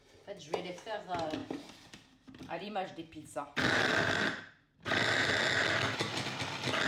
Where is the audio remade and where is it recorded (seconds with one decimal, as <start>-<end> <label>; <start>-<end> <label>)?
0.0-1.4 recorded; 1.4-5.3 remade; 5.3-6.9 recorded